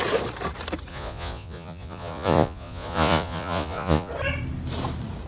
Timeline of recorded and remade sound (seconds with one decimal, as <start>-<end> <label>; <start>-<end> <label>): 0.0-0.9 recorded; 0.9-4.1 remade; 4.1-5.3 recorded

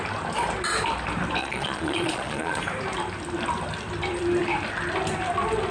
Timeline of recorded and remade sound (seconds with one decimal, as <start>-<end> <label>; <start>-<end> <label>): 0.0-1.4 recorded; 1.4-2.6 remade; 2.6-5.7 recorded

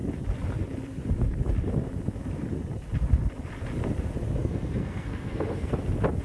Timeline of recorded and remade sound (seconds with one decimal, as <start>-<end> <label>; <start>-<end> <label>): 0.0-4.4 recorded; 4.4-5.7 remade; 5.7-6.2 recorded